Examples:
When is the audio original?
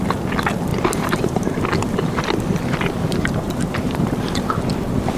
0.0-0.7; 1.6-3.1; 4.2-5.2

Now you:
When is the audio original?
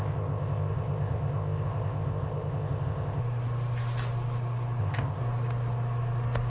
3.2-4.8; 5.2-6.5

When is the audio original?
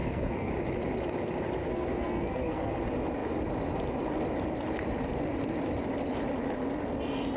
0.5-1.6; 2.7-7.4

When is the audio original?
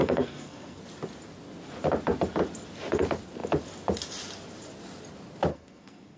0.8-5.5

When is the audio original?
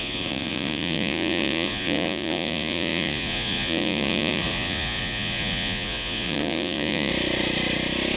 7.1-8.2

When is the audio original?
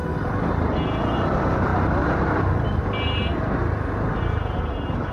0.0-5.1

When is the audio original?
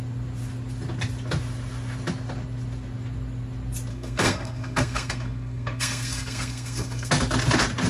0.0-3.9; 7.1-7.9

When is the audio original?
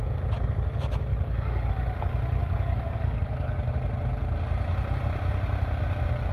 0.0-1.1; 1.7-2.4; 3.7-6.3